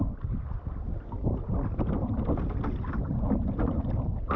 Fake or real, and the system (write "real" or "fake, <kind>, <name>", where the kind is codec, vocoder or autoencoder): real